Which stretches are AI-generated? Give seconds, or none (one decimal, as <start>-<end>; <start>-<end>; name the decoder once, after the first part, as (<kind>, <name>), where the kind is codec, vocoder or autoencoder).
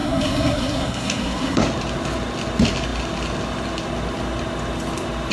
0.0-1.6 (codec, SNAC)